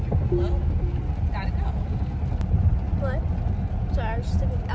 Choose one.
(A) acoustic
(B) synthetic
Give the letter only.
A